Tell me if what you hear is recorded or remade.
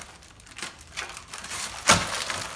recorded